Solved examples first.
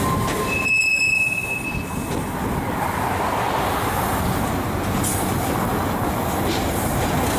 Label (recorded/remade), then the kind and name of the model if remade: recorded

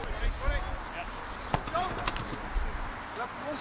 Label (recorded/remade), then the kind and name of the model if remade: recorded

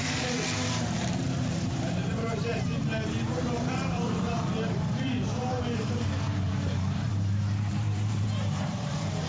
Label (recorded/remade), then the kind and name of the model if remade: remade, vocoder, BigVGAN v2